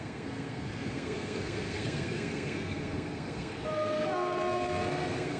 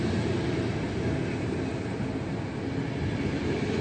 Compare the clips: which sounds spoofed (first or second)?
first